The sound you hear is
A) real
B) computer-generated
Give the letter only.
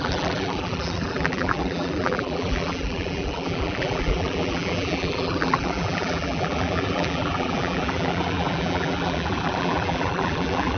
B